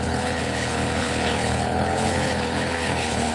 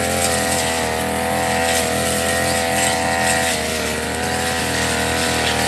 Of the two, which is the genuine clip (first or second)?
second